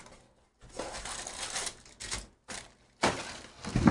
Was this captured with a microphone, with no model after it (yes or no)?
yes